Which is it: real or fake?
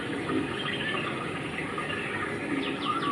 real